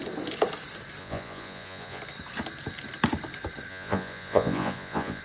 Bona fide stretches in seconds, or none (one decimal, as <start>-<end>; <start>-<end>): 0.0-1.0; 2.0-3.7